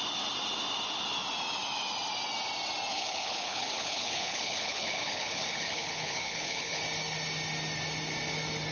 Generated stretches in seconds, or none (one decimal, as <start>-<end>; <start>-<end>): 2.9-6.8